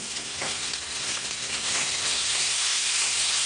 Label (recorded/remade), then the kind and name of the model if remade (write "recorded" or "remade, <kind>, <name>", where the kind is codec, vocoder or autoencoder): remade, codec, SNAC